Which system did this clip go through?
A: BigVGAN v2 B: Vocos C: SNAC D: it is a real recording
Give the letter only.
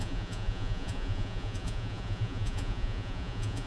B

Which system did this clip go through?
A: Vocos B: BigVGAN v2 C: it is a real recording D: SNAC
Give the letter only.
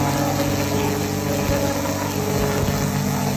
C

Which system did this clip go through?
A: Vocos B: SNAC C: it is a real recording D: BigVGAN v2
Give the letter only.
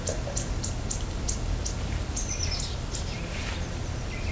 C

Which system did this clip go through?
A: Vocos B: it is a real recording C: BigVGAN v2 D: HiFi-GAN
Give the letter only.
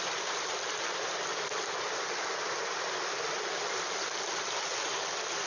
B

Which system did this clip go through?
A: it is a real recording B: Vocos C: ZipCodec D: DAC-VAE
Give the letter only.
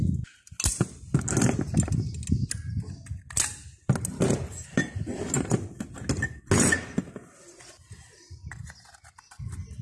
A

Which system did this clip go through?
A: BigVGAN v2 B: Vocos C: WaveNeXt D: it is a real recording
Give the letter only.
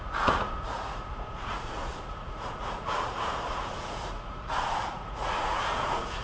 B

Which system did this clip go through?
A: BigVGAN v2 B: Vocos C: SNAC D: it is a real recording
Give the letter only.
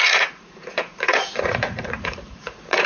B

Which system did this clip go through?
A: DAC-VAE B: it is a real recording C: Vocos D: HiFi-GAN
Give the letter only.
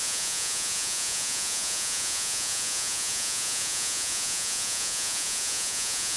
C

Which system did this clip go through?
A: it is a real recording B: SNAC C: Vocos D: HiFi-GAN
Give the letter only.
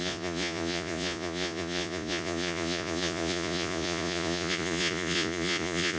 C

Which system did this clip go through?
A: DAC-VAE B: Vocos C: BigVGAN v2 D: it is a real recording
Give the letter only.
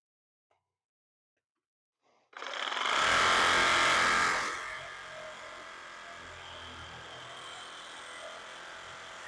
D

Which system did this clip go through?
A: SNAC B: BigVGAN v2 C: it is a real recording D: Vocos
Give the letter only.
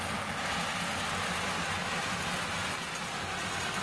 C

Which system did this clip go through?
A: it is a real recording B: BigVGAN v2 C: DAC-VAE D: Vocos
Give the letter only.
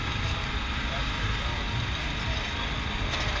A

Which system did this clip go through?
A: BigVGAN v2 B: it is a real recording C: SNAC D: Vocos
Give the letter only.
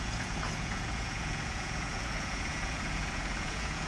D